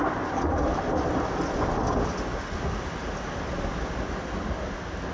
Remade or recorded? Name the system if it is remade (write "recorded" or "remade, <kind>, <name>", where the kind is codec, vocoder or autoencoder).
recorded